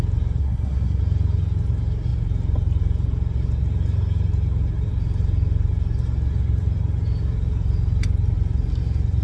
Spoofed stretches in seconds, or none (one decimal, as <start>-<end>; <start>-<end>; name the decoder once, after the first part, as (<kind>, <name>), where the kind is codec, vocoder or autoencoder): 0.4-1.0 (codec, SNAC)